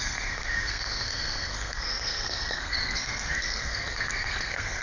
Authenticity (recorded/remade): remade